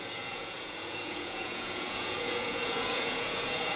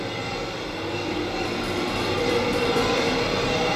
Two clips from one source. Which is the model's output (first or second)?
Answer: first